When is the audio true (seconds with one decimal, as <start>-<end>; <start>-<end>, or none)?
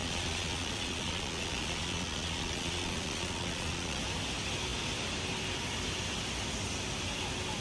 4.0-7.6